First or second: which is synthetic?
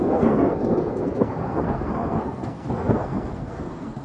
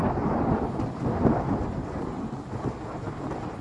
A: first